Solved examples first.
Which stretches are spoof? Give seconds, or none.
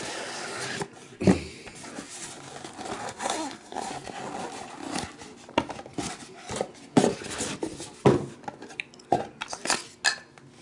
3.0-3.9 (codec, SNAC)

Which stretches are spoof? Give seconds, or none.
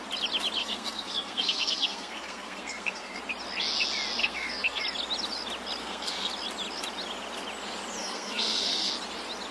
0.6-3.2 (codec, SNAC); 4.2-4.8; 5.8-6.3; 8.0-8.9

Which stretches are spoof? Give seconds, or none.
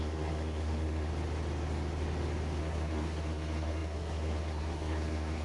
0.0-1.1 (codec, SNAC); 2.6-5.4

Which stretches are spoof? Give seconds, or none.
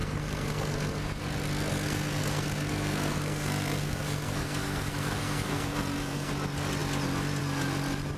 0.0-1.2 (codec, SNAC); 1.7-6.3